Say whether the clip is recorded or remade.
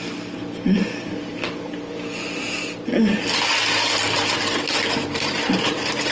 recorded